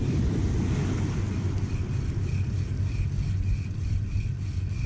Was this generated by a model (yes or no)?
no